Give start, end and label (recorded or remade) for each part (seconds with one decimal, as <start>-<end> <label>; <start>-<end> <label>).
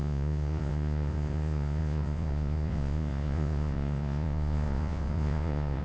0.0-5.8 remade